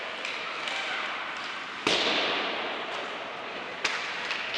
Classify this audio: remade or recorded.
recorded